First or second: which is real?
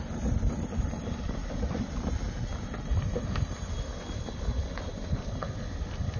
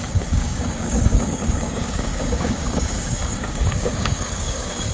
first